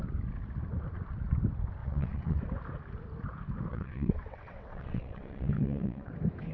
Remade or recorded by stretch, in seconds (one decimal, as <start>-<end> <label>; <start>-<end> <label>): 0.0-1.8 recorded; 1.8-2.4 remade; 2.4-3.7 recorded; 3.7-6.1 remade; 6.1-6.5 recorded